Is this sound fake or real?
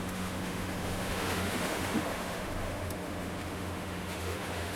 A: fake